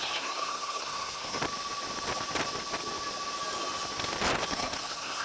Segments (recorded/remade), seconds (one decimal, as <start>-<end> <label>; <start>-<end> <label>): 0.0-1.4 remade; 1.4-4.5 recorded; 4.5-5.2 remade